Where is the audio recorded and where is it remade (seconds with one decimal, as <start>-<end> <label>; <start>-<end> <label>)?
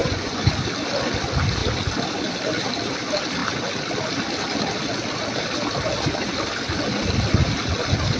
0.0-0.5 remade; 0.5-8.2 recorded